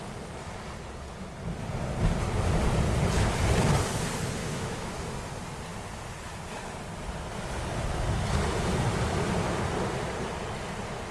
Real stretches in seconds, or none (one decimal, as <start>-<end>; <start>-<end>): 0.0-4.4; 5.1-11.1